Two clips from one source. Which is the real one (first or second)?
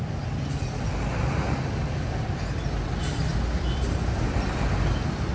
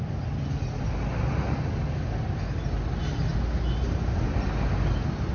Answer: second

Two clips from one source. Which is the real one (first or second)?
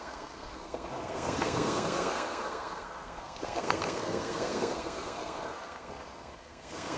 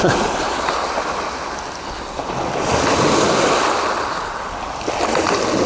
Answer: second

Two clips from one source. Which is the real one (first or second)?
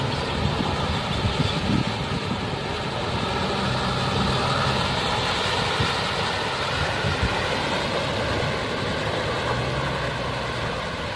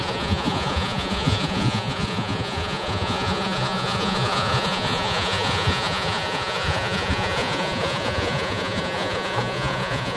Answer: first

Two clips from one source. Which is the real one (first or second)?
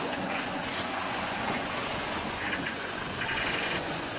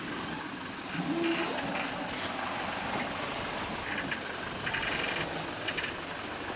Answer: second